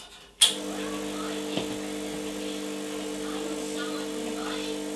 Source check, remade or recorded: recorded